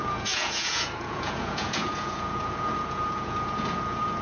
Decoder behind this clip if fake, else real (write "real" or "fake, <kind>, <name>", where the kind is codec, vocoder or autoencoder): fake, vocoder, Vocos